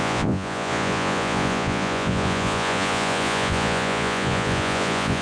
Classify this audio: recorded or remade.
remade